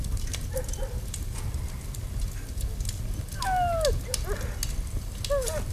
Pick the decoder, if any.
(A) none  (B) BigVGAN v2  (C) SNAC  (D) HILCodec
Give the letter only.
A